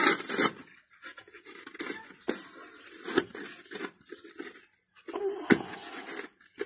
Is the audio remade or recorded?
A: recorded